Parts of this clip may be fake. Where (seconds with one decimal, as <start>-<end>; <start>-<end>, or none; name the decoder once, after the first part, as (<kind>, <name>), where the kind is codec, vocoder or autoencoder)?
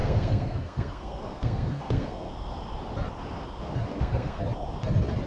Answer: 0.0-2.3 (codec, SNAC); 3.9-4.4